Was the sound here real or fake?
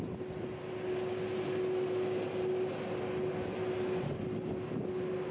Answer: real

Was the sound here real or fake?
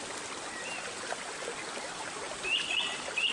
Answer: real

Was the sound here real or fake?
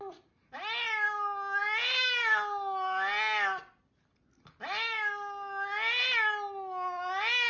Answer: real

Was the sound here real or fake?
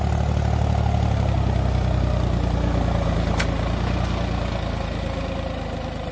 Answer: real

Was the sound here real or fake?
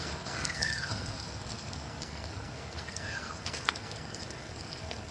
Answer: fake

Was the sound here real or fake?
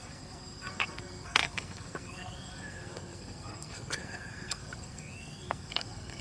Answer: fake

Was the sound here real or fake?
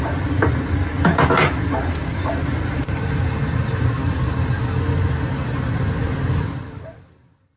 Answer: fake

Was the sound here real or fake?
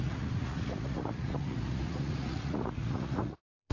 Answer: fake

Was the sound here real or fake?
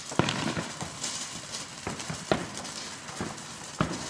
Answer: real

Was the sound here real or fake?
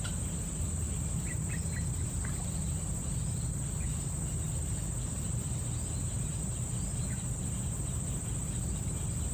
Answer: real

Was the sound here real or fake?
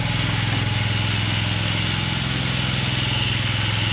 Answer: real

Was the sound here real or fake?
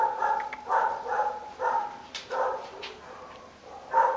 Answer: fake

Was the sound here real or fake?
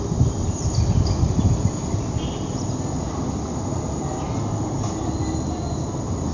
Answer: real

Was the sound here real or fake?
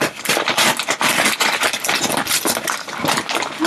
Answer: real